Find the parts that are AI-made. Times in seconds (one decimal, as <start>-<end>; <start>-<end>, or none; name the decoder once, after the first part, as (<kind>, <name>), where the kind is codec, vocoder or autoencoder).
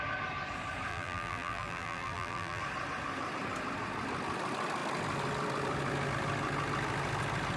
0.9-2.6 (vocoder, BigVGAN v2)